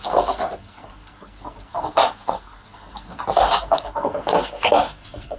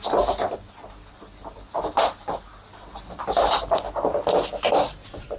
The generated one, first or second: first